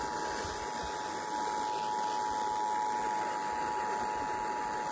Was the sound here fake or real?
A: real